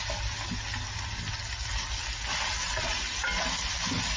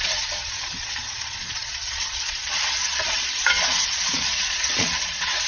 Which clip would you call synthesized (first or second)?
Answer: second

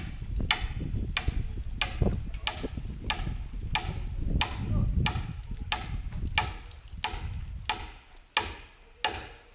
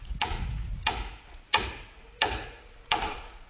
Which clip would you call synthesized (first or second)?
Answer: second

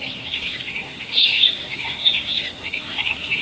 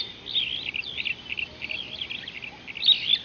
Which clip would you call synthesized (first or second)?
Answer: first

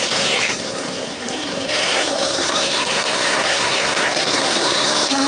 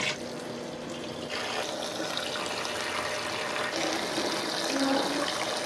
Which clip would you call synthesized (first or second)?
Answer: first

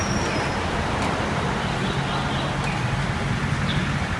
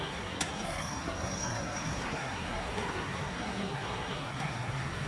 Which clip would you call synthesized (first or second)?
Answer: second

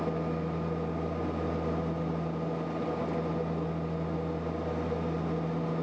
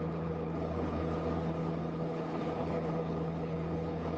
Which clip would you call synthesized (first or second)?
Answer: second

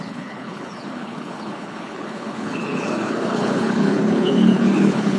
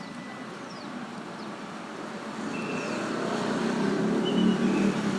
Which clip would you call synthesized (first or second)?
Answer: first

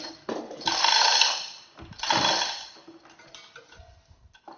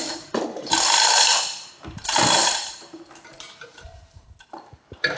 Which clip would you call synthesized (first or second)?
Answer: second